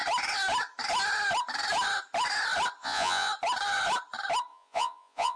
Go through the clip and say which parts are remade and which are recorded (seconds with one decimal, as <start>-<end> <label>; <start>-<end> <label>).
0.0-2.8 recorded; 2.8-3.3 remade; 3.3-4.5 recorded; 4.5-5.4 remade